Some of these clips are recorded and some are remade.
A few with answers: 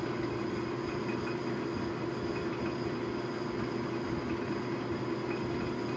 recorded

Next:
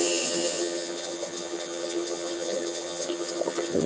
remade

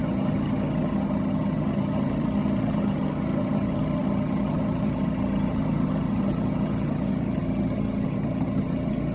remade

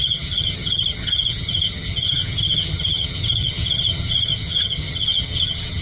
remade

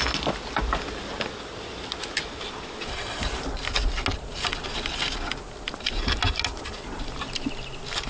recorded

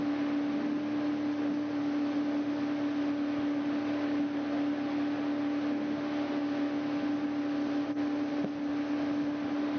recorded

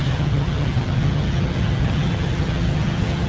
remade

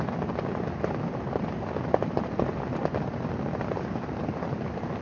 recorded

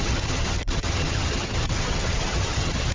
remade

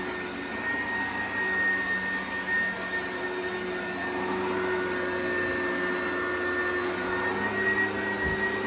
recorded